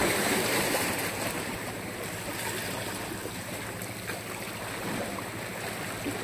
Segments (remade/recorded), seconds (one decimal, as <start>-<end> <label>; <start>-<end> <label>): 0.0-2.0 remade; 2.0-6.2 recorded